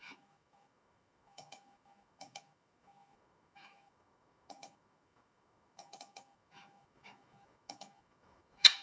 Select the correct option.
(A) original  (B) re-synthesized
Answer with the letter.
B